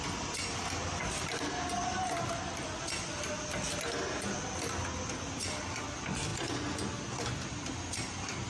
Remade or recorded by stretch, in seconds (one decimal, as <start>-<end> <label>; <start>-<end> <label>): 0.0-8.5 recorded